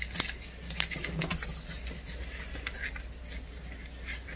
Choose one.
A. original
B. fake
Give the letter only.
A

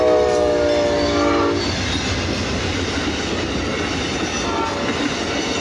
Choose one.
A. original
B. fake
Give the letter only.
A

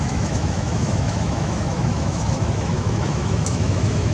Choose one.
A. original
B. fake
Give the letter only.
B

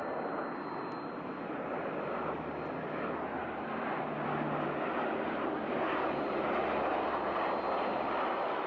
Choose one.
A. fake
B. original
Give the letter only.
B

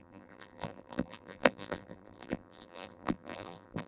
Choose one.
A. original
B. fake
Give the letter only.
B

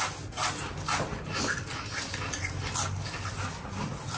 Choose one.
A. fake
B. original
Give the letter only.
B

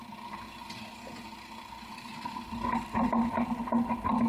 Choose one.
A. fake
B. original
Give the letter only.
B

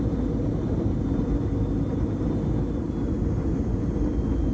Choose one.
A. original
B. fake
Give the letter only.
A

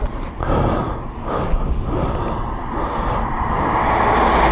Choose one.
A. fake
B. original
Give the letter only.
B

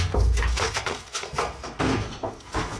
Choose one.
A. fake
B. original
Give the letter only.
A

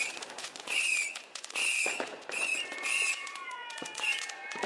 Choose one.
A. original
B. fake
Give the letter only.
B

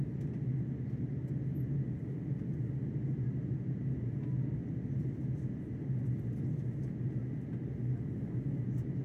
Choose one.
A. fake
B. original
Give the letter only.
B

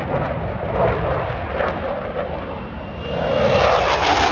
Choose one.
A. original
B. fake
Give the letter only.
A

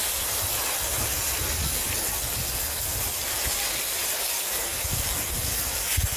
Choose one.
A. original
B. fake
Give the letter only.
A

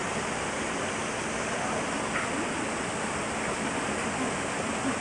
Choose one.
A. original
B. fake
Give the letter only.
A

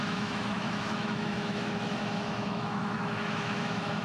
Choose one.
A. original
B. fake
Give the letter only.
B